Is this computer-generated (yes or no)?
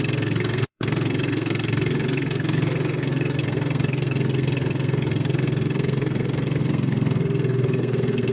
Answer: yes